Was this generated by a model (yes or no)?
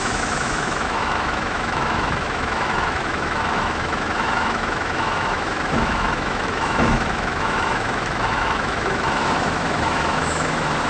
yes